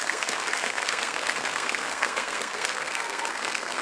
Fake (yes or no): yes